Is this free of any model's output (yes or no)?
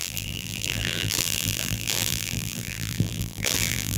no